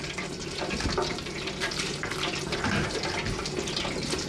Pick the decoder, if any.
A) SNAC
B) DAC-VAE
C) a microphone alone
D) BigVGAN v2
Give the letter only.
C